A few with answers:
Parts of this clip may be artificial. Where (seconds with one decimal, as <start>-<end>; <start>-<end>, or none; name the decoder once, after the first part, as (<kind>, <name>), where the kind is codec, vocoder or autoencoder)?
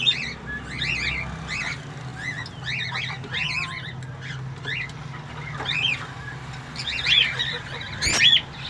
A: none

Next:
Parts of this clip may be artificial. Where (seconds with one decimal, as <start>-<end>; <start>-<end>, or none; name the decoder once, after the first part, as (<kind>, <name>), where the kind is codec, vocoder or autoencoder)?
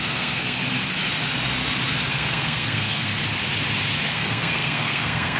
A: 0.0-0.6 (codec, SNAC); 2.1-3.2; 4.1-5.4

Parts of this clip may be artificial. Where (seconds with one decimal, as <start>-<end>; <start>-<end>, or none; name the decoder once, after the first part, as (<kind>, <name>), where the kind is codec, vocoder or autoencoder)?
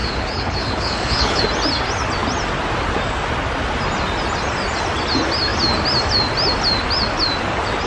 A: 0.0-1.4 (codec, HILCodec)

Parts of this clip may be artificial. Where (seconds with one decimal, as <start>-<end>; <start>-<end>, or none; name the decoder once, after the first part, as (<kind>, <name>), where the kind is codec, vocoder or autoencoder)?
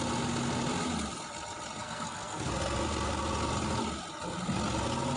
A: 1.8-2.5 (codec, SNAC)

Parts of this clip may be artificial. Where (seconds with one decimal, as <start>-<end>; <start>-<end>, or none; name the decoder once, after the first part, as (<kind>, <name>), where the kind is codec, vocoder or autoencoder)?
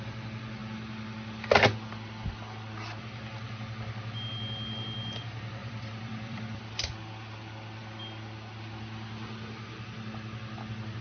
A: 5.6-6.6 (vocoder, BigVGAN v2)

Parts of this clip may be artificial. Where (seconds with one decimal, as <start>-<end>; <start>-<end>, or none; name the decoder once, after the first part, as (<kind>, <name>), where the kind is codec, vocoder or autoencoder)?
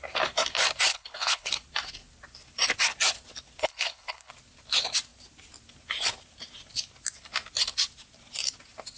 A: 0.9-1.5 (codec, HILCodec); 3.6-4.3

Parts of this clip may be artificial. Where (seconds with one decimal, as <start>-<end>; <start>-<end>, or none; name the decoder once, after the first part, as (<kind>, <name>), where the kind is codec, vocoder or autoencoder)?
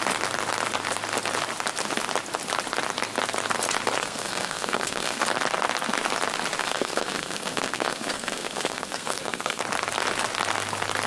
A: 4.0-5.2 (codec, SNAC); 6.6-9.6